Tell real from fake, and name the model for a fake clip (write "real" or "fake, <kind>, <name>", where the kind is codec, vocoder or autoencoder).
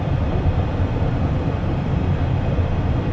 fake, vocoder, BigVGAN v2